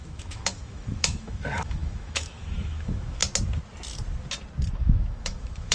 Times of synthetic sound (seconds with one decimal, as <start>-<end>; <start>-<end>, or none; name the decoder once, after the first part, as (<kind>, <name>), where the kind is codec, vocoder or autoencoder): 0.0-3.2 (autoencoder, DAC-VAE); 4.8-5.7